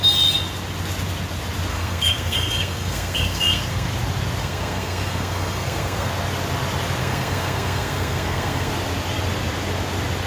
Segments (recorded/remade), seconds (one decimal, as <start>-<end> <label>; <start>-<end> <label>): 0.0-1.7 recorded; 1.7-3.9 remade; 3.9-4.4 recorded; 4.4-6.1 remade; 6.1-7.0 recorded; 7.0-8.7 remade; 8.7-10.3 recorded